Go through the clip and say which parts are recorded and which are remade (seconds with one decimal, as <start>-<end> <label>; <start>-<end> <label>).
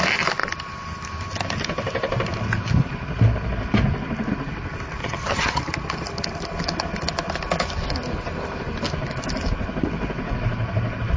0.0-5.0 recorded; 5.0-5.6 remade; 5.6-11.2 recorded